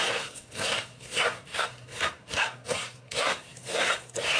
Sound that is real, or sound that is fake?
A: fake